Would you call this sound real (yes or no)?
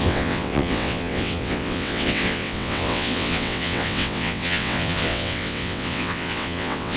no